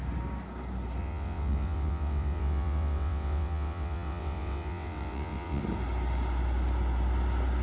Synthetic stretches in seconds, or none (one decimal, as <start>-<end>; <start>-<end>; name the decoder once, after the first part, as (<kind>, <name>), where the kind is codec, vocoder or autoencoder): 1.0-5.6 (vocoder, WaveNeXt)